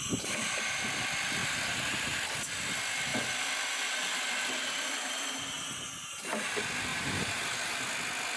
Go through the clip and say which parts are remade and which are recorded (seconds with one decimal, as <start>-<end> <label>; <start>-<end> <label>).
0.0-1.4 recorded; 1.4-2.2 remade; 2.2-6.9 recorded; 6.9-7.8 remade; 7.8-8.4 recorded